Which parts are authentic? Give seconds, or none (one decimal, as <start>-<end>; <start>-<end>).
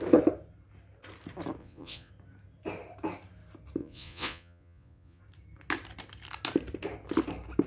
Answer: 0.0-1.6; 2.1-3.8; 5.2-7.7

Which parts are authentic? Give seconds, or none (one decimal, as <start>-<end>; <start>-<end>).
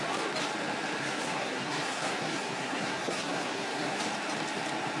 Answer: 0.0-1.0; 4.0-5.0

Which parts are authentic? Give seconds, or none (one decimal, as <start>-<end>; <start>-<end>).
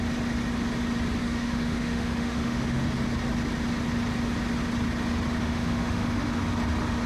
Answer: 0.0-1.2; 2.8-5.4; 6.4-7.1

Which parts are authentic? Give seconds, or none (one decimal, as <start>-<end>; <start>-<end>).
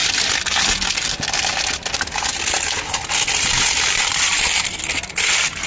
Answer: 0.0-5.7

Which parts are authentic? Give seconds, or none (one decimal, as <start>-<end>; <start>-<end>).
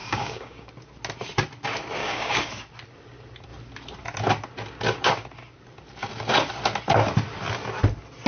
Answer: 0.7-2.0; 2.5-8.3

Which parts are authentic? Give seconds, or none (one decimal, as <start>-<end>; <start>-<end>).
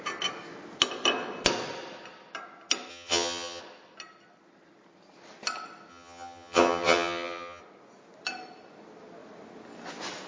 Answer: 0.0-2.9; 3.6-5.9; 7.6-10.3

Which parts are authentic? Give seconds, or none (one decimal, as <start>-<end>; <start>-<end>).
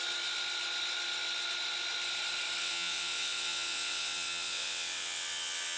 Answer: 0.0-2.6